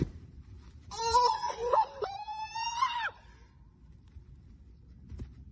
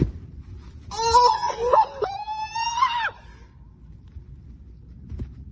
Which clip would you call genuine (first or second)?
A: second